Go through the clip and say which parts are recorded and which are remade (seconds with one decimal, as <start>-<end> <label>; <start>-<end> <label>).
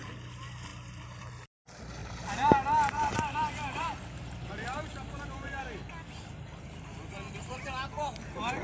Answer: 0.0-2.0 recorded; 2.0-5.6 remade; 5.6-8.6 recorded